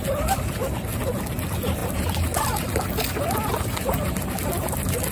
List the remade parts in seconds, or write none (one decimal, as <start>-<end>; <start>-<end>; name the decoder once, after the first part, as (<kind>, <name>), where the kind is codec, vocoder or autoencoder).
none